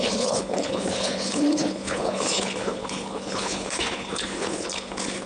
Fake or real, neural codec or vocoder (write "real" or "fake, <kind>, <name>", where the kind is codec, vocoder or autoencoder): fake, codec, HILCodec